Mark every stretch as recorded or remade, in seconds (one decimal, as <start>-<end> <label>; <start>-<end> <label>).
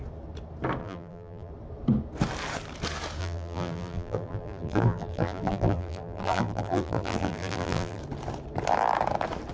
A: 0.0-0.8 recorded; 0.8-1.5 remade; 1.5-3.2 recorded; 3.2-8.0 remade; 8.0-9.5 recorded